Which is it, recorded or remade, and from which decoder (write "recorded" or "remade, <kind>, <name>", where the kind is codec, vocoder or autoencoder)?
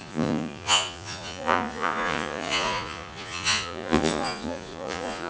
remade, vocoder, Vocos